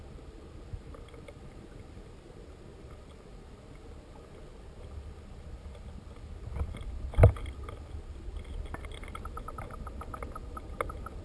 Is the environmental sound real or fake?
real